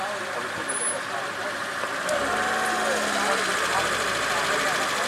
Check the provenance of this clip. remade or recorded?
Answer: recorded